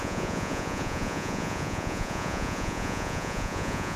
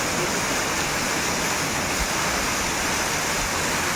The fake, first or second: first